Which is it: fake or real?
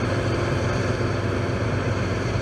fake